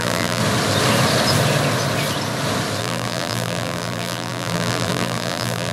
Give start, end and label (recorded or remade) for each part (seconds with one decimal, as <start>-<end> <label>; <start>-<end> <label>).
0.0-0.4 remade; 0.4-2.8 recorded; 2.8-5.7 remade